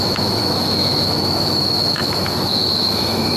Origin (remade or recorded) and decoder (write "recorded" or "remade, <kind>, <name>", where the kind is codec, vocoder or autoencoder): remade, autoencoder, DAC-VAE